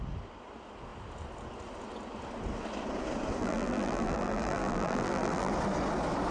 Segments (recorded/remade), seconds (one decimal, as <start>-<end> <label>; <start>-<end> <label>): 0.0-3.4 recorded; 3.4-5.5 remade; 5.5-6.3 recorded